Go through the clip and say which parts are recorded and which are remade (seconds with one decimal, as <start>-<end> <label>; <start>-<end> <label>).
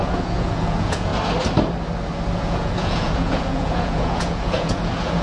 0.0-1.1 remade; 1.1-2.4 recorded; 2.4-5.2 remade